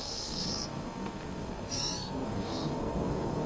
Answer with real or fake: fake